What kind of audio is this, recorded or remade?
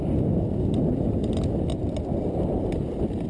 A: recorded